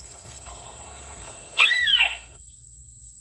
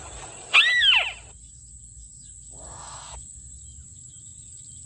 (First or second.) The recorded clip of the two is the second